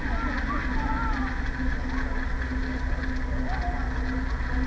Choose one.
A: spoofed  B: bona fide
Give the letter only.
B